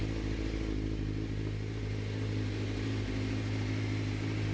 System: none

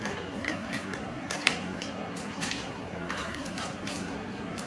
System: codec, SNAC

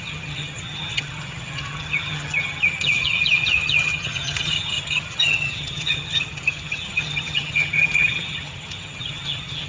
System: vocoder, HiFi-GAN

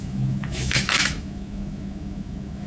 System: autoencoder, DAC-VAE